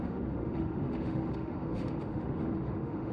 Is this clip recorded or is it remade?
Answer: remade